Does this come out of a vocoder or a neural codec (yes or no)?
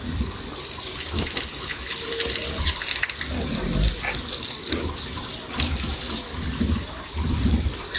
no